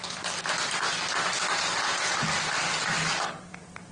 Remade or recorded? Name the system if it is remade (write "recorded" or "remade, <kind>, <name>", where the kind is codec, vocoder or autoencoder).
recorded